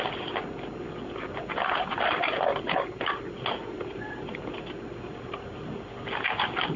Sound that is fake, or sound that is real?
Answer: real